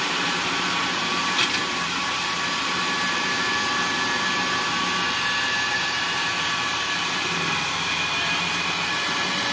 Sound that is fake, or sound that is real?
fake